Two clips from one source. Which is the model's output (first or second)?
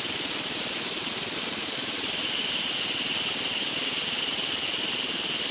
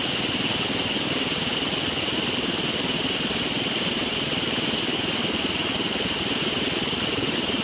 second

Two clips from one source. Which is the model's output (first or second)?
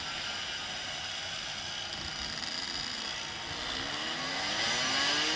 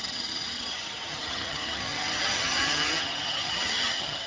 second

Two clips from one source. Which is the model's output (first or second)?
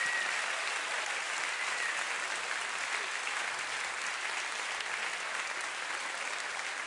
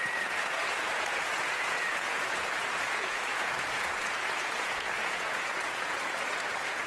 second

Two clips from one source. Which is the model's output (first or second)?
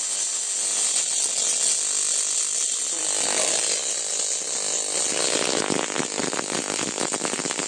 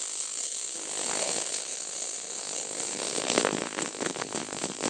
second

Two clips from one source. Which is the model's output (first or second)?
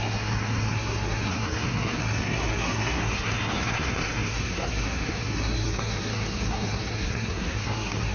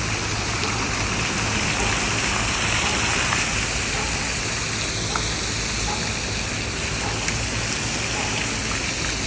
first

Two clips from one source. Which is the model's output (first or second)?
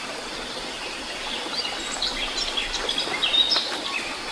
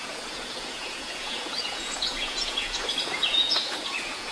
second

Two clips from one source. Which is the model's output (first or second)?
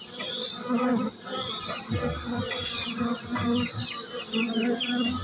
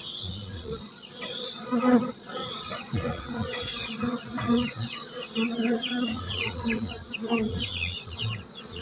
second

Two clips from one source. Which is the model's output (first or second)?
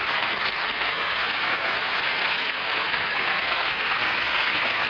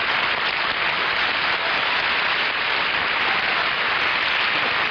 first